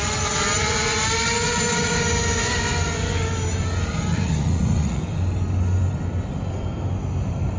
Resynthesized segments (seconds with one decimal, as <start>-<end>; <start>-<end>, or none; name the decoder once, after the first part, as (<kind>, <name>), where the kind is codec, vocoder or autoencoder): 4.1-5.0 (vocoder, Vocos)